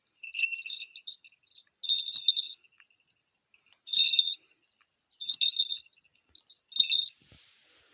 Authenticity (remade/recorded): recorded